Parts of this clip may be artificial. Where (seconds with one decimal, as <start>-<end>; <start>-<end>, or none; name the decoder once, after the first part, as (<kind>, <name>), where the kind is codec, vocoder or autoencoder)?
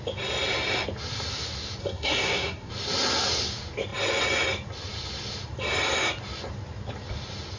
1.8-2.7 (codec, SNAC)